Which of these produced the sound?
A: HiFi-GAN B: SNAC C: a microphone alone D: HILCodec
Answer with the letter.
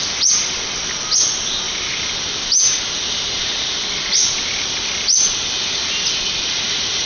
C